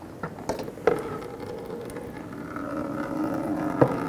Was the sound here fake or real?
real